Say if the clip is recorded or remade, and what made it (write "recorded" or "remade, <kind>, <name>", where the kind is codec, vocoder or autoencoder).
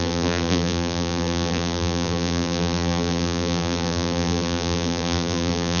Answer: remade, vocoder, BigVGAN v2